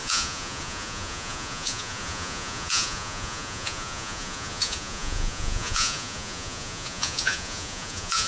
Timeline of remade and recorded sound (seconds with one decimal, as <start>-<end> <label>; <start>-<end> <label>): 0.0-8.3 remade